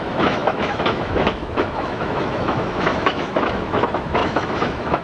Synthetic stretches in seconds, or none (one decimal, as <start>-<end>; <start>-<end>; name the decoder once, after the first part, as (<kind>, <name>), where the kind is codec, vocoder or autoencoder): 0.0-5.0 (autoencoder, DAC-VAE)